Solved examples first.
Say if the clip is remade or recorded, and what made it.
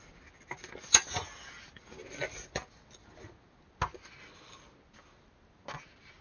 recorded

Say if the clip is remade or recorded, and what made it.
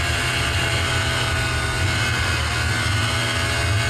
recorded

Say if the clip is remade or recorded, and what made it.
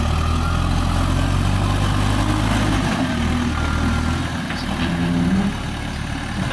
recorded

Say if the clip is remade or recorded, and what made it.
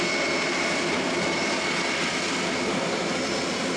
recorded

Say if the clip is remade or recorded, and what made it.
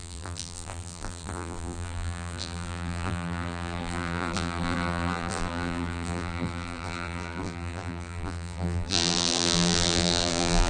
remade, vocoder, BigVGAN v2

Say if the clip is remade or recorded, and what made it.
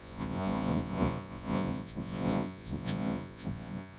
remade, vocoder, Vocos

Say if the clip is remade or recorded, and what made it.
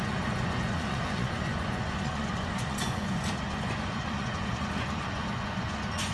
remade, vocoder, Vocos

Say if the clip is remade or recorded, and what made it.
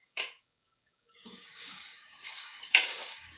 remade, codec, DAC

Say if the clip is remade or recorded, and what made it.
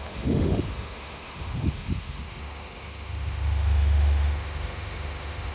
remade, autoencoder, DAC-VAE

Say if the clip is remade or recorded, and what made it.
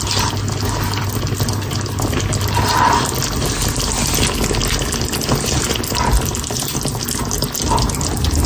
recorded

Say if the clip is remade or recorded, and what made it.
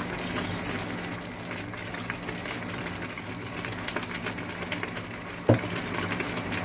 recorded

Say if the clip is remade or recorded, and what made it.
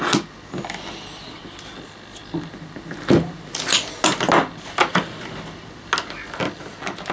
recorded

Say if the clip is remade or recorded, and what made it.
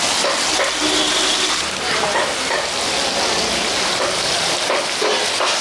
recorded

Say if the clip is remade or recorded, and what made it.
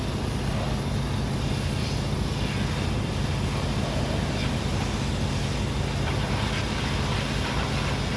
recorded